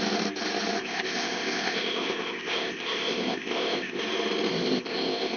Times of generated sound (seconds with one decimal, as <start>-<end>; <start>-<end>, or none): 0.8-4.0; 4.5-5.4